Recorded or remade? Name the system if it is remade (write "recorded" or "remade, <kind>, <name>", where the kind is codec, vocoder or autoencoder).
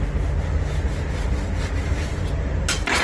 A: recorded